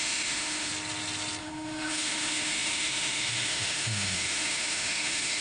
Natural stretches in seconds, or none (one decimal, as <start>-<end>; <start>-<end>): 0.7-1.4